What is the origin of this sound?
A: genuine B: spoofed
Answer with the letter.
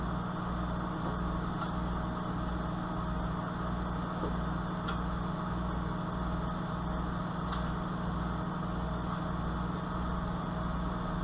A